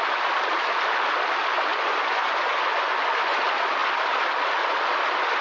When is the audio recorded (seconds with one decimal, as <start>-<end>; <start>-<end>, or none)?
0.0-1.7; 3.4-5.4